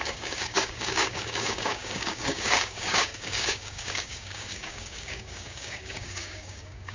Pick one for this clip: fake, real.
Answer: fake